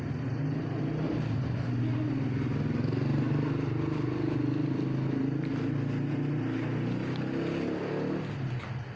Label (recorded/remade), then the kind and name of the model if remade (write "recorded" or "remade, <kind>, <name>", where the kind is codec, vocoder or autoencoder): recorded